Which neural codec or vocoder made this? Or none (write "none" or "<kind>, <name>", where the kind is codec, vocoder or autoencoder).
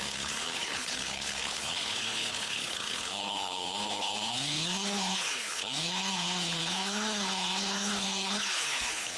codec, HILCodec